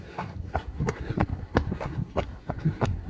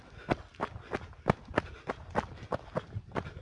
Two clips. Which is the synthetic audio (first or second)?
first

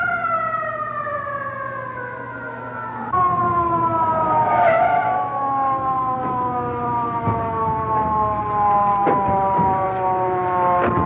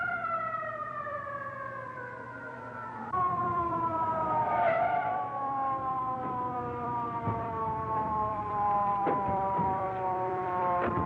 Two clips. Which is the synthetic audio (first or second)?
second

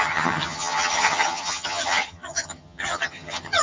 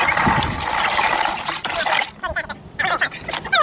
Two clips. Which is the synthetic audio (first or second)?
first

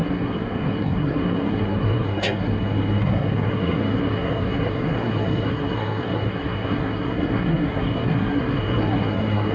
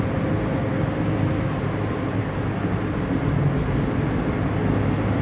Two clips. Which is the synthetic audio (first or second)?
first